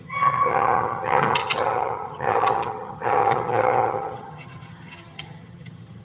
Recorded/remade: remade